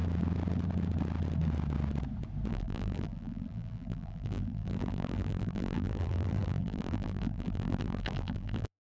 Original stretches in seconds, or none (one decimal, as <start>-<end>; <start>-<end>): 0.0-2.5